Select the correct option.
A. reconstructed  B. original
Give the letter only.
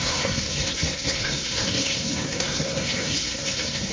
A